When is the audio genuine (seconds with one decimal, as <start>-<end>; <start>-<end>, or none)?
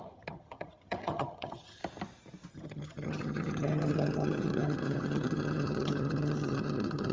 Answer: 1.8-2.5